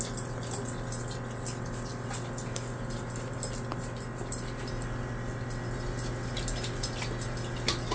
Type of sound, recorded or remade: recorded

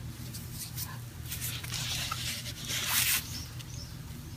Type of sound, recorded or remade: recorded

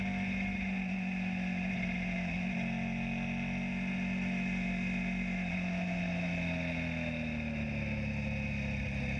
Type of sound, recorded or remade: recorded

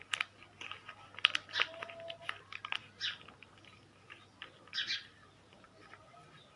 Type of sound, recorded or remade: recorded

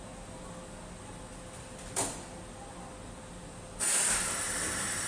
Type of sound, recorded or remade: recorded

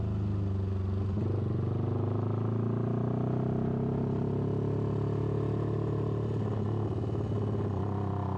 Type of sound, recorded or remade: recorded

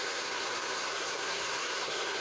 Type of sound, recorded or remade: remade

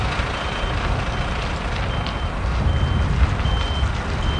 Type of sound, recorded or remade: recorded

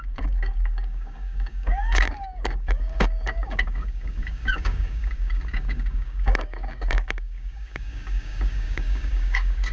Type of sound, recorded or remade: remade